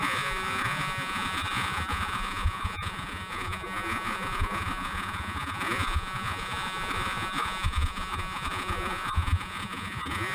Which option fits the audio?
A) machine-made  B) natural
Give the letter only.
A